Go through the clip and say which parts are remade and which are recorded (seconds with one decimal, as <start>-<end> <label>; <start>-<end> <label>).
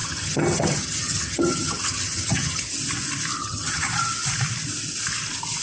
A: 0.0-2.7 remade; 2.7-3.4 recorded; 3.4-3.9 remade; 3.9-5.6 recorded